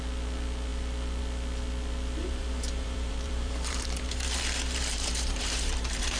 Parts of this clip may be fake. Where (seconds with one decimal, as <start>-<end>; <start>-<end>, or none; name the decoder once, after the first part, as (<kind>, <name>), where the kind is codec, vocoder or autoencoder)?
2.2-6.2 (vocoder, BigVGAN v2)